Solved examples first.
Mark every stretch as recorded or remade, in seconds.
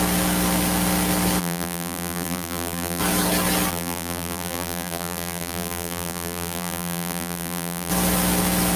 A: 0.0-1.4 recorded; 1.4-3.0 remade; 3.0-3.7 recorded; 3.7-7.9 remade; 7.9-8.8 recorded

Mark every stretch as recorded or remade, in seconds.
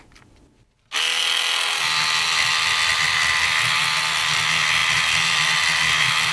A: 0.0-6.3 recorded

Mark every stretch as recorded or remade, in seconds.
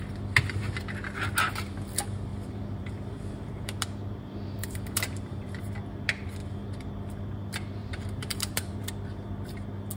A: 0.0-2.3 recorded; 2.3-5.6 remade; 5.6-7.8 recorded; 7.8-8.9 remade; 8.9-10.0 recorded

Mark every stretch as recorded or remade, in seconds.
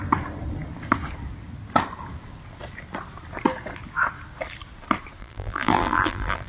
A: 0.0-5.2 recorded; 5.2-6.5 remade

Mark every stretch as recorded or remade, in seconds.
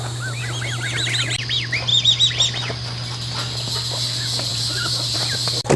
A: 0.0-4.5 recorded; 4.5-5.8 remade